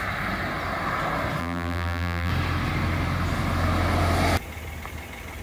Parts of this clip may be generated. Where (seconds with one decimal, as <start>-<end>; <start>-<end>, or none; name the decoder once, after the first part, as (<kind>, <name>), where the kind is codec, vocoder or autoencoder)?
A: 1.4-2.3 (vocoder, BigVGAN v2)